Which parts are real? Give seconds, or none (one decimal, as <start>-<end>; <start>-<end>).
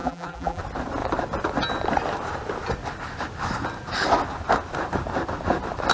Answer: 0.6-5.9